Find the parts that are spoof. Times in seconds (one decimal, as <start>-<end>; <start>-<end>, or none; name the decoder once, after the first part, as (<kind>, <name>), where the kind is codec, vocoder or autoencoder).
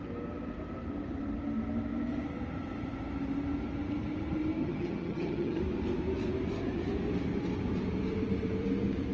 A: 4.6-5.6 (vocoder, HiFi-GAN)